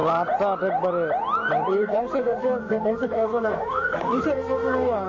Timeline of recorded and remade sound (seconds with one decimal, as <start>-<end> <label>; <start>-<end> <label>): 0.0-1.7 recorded; 1.7-5.1 remade